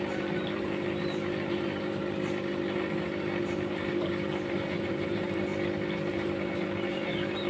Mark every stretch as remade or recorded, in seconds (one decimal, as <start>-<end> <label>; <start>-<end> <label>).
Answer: 0.0-5.5 remade; 5.5-6.1 recorded; 6.1-7.5 remade